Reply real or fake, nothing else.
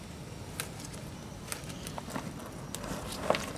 real